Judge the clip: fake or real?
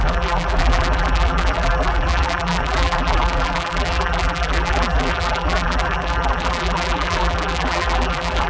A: fake